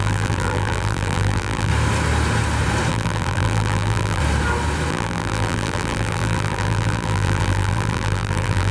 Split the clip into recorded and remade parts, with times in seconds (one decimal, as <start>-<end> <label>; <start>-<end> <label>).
0.0-1.7 remade; 1.7-2.9 recorded; 2.9-4.2 remade; 4.2-4.9 recorded; 4.9-8.7 remade